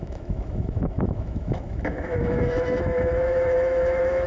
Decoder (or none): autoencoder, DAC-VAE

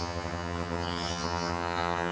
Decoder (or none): vocoder, HiFi-GAN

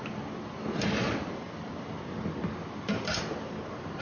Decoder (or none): none